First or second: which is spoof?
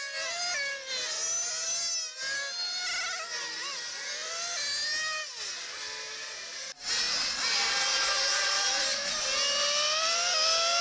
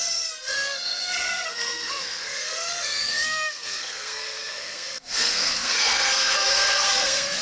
second